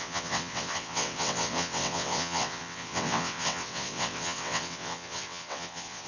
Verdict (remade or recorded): remade